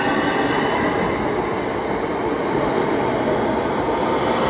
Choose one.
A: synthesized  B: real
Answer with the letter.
B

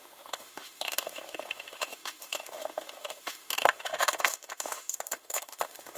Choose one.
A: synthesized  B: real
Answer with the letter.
A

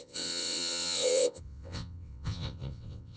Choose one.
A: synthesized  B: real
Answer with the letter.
A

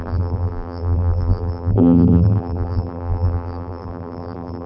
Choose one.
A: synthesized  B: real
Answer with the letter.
A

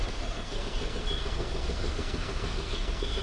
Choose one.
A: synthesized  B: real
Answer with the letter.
A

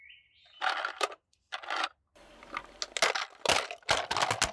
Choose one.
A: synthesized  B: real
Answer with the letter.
B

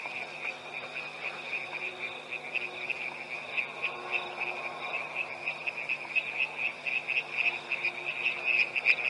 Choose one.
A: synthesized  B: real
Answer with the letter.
B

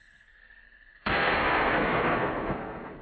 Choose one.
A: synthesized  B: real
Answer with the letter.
A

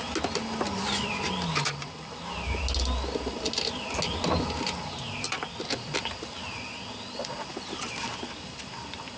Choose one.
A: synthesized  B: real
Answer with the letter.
B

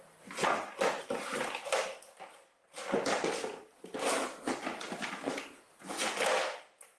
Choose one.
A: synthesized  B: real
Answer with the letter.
B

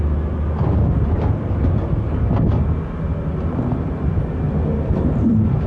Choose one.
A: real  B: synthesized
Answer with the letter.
A